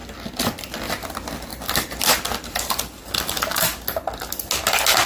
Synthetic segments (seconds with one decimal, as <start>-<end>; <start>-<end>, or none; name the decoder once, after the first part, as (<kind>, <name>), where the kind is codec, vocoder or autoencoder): 0.0-0.9 (vocoder, BigVGAN v2)

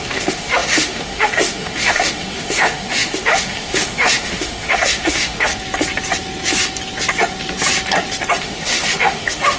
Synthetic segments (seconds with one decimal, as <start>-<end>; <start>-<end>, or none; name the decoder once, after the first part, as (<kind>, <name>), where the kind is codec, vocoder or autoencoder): 0.0-5.5 (autoencoder, DAC-VAE); 8.4-9.6

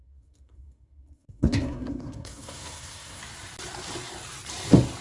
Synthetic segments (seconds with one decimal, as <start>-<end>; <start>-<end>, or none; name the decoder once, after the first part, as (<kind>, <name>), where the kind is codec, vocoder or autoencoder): 0.0-3.2 (codec, SNAC)

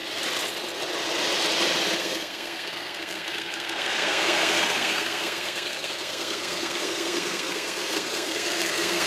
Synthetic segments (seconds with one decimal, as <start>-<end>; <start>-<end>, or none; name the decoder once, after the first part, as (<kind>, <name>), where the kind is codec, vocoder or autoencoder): 2.0-9.1 (codec, SNAC)

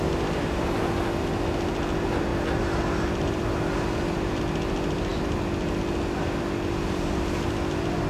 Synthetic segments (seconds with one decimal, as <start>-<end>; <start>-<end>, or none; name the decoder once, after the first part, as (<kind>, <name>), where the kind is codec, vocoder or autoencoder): 2.3-4.4 (vocoder, BigVGAN v2)

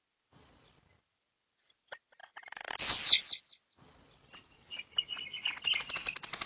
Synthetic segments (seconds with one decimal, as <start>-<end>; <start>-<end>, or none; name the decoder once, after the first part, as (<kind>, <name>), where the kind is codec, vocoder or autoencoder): none

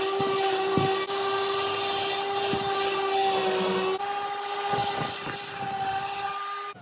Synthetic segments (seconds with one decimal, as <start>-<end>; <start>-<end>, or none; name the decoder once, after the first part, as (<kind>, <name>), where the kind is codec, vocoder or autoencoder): none